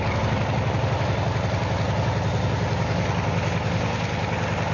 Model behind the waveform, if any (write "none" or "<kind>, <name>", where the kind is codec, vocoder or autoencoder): none